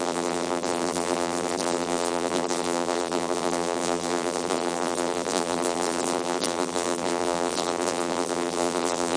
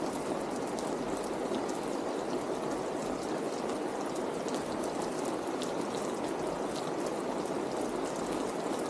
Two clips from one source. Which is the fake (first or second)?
first